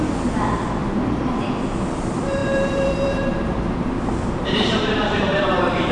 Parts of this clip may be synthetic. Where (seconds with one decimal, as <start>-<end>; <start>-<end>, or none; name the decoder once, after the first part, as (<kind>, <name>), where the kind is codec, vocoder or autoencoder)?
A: 2.4-5.9 (vocoder, BigVGAN v2)